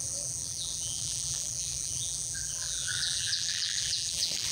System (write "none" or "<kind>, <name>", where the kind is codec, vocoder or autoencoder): vocoder, BigVGAN v2